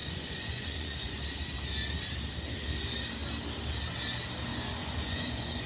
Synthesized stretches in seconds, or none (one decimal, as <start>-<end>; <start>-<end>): 0.0-1.2; 4.5-5.7